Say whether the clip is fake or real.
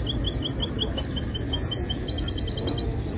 real